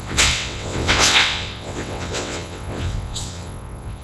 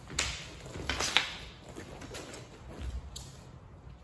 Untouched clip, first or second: second